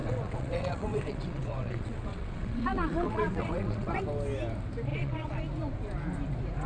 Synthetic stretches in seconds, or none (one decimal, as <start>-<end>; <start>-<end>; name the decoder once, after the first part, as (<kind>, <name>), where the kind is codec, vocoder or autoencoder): 0.0-4.0 (vocoder, WaveNeXt); 4.9-5.4